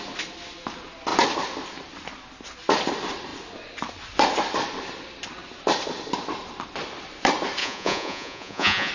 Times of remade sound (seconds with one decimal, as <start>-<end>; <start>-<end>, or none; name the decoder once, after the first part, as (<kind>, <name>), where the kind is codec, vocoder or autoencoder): 7.6-8.9 (vocoder, Vocos)